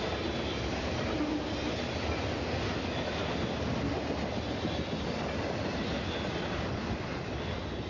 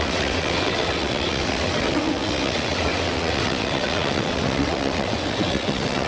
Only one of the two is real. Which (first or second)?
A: first